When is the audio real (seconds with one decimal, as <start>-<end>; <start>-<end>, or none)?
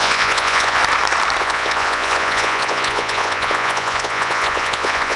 0.8-1.4